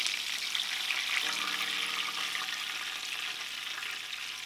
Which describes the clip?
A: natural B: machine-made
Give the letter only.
A